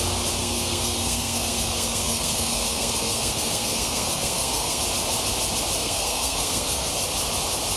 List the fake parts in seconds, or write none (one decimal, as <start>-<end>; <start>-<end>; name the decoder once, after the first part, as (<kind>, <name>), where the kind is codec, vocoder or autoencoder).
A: 0.4-4.8 (codec, SNAC); 5.8-6.9